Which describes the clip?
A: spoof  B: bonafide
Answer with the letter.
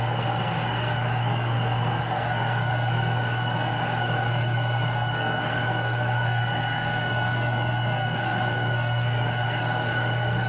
A